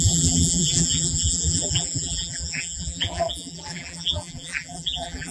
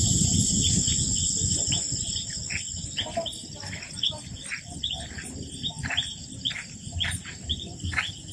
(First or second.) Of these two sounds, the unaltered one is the second